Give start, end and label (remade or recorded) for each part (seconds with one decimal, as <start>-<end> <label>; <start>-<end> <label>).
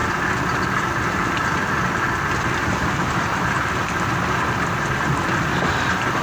0.0-3.7 remade; 3.7-6.2 recorded